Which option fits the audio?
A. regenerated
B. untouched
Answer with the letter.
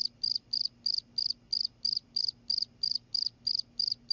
B